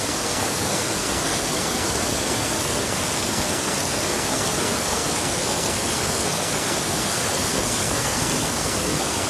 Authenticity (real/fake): fake